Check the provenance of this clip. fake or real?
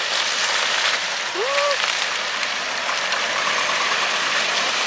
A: fake